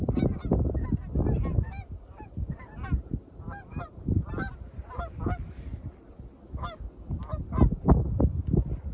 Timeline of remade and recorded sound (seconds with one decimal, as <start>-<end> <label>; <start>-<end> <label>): 0.0-1.5 recorded; 1.5-5.0 remade; 5.0-8.9 recorded